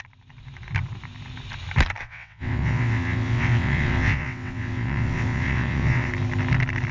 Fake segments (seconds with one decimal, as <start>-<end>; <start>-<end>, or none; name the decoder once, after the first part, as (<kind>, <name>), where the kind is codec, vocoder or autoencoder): 2.0-6.1 (vocoder, WaveNeXt)